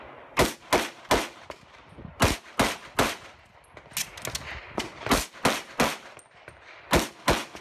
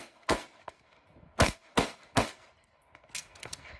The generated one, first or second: second